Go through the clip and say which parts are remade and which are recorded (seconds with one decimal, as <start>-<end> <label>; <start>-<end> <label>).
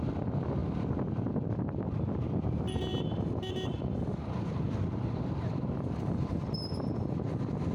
0.0-7.7 recorded